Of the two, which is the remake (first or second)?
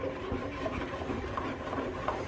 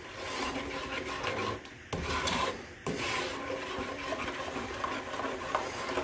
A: first